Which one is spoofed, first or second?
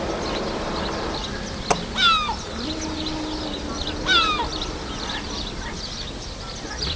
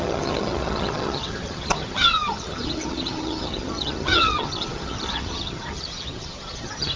second